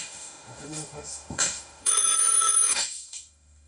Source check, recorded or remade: remade